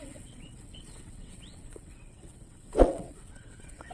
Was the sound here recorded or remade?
remade